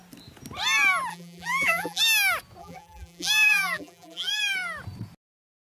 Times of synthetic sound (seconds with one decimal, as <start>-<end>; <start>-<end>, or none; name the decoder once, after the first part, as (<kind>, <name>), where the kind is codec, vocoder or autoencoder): 1.1-2.0 (vocoder, BigVGAN v2); 2.6-4.4